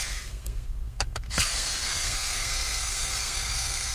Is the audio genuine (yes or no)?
no